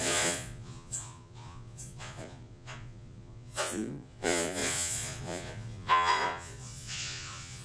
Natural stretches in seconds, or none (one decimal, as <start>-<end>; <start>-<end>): none